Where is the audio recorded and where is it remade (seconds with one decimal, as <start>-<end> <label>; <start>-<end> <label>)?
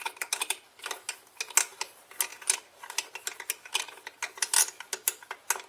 0.0-5.7 recorded